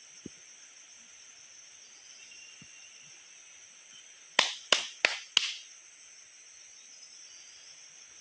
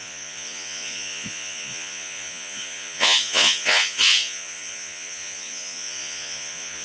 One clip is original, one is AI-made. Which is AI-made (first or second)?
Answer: second